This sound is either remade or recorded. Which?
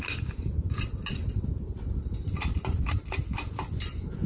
recorded